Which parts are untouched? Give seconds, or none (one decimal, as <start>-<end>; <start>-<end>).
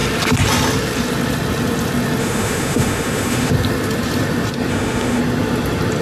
0.0-2.2; 3.5-4.7; 5.2-6.0